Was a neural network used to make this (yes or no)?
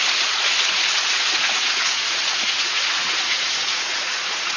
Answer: yes